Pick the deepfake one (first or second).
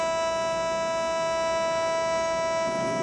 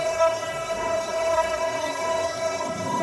second